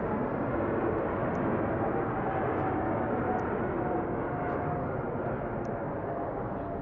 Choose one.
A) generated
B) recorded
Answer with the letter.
B